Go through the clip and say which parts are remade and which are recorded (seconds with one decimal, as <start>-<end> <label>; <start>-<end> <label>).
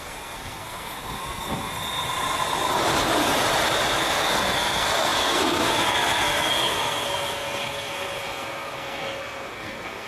0.0-1.7 remade; 1.7-4.0 recorded; 4.0-10.1 remade